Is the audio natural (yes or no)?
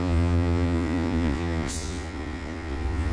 no